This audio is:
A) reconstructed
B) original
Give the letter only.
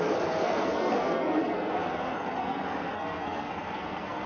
A